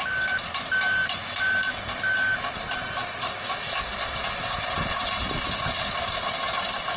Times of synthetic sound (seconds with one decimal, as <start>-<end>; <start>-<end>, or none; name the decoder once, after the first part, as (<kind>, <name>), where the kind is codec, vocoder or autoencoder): none